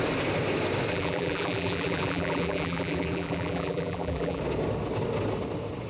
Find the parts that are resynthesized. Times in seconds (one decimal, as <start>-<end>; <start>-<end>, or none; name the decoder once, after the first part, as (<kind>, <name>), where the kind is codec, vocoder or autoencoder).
0.9-4.4 (vocoder, BigVGAN v2)